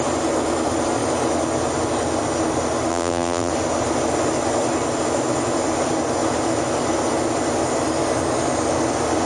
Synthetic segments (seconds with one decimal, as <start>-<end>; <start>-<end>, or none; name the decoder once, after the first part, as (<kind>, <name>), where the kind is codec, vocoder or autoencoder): 2.9-3.5 (vocoder, BigVGAN v2)